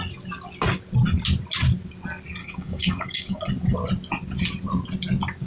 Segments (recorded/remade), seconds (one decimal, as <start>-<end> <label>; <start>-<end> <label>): 0.0-2.4 recorded; 2.4-3.4 remade; 3.4-5.5 recorded